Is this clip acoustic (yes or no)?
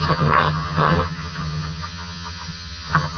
no